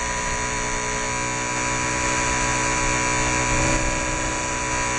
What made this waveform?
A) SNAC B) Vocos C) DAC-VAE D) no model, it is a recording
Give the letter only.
D